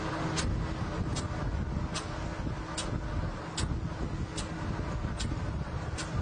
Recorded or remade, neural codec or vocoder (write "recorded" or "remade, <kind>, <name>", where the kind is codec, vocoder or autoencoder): recorded